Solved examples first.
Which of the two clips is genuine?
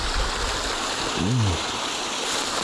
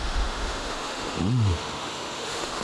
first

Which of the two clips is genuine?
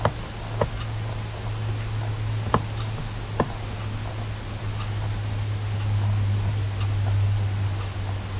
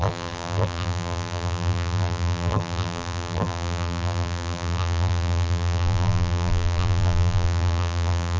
first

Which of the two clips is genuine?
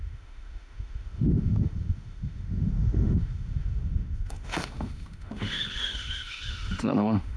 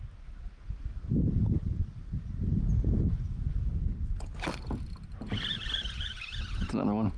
second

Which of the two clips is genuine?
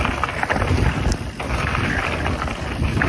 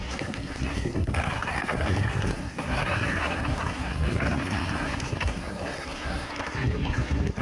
first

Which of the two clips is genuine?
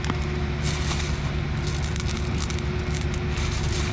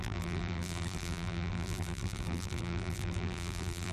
first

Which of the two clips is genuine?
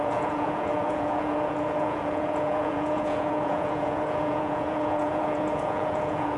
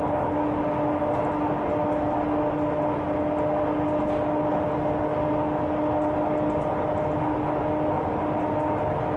second